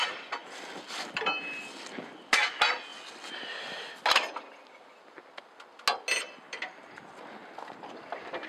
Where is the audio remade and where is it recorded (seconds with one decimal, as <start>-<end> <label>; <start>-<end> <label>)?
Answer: 0.0-8.5 recorded